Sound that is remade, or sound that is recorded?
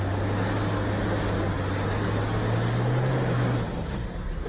recorded